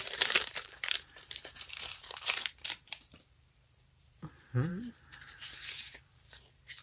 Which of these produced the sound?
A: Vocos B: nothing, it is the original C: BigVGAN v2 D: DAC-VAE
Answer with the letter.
C